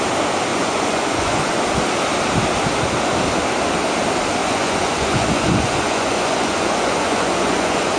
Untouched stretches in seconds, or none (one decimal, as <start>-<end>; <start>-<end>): 0.0-0.5; 1.6-4.4